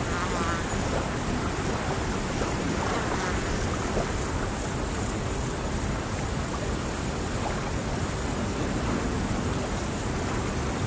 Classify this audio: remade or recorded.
recorded